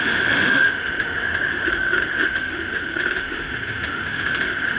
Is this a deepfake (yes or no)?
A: yes